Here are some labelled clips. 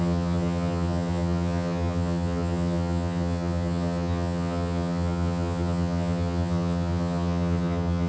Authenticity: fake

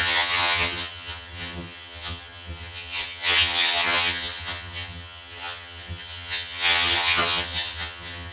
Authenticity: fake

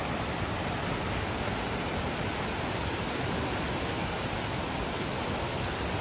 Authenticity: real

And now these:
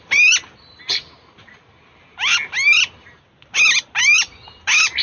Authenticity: real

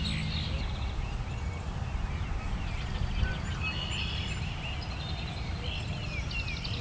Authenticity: real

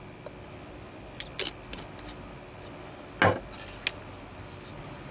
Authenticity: real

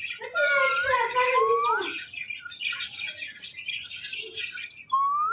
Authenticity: real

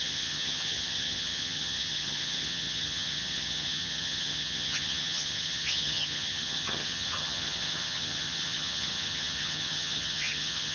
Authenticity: fake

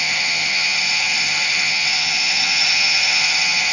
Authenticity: fake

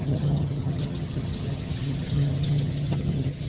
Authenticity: fake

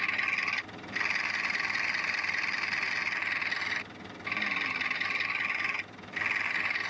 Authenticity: real